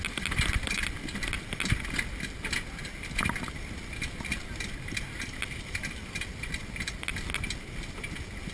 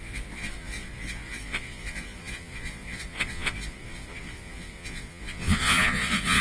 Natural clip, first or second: first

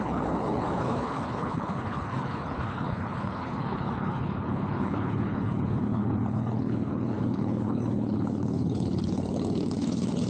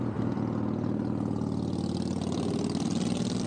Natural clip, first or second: second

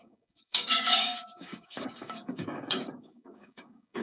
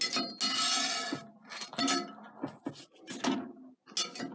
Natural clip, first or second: second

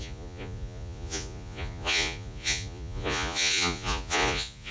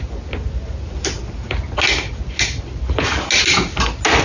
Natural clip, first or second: second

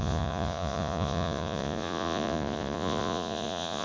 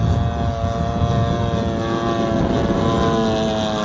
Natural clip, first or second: second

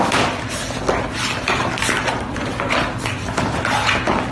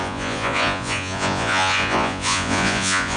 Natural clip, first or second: first